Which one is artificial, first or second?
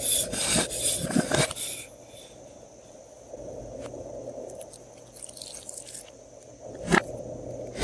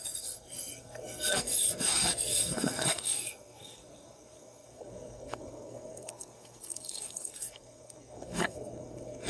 second